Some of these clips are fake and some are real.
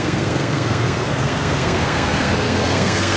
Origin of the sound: fake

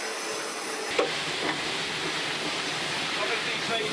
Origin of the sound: real